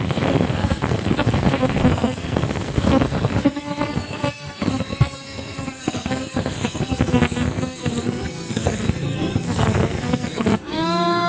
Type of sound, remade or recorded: remade